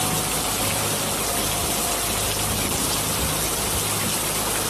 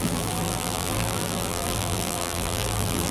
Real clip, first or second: first